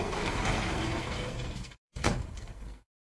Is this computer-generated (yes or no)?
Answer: yes